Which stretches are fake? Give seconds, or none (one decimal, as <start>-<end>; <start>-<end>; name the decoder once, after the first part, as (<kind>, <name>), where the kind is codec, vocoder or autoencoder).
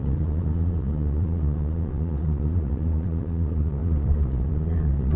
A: 0.0-5.2 (vocoder, Vocos)